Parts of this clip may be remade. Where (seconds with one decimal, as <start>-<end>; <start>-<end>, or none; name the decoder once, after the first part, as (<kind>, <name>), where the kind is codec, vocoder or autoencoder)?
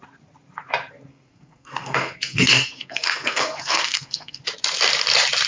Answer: 1.1-4.4 (codec, SNAC)